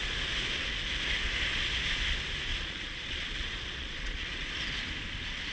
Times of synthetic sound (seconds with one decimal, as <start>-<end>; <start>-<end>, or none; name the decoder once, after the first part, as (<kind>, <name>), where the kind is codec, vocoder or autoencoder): 2.5-4.5 (vocoder, Vocos)